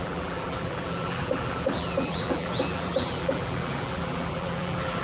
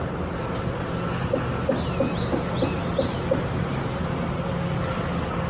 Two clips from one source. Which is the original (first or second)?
second